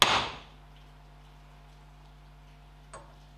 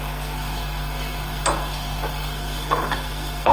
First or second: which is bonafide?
first